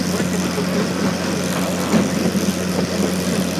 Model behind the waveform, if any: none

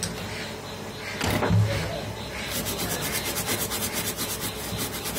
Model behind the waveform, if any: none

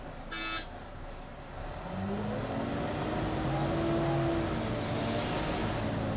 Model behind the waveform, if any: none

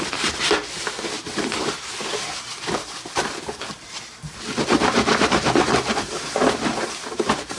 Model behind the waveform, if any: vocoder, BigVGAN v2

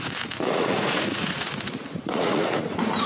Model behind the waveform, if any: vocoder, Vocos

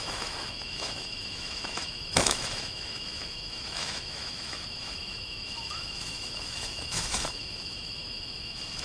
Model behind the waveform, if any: autoencoder, DAC-VAE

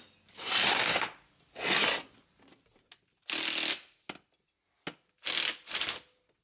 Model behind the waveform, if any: none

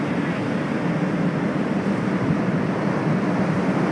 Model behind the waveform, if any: none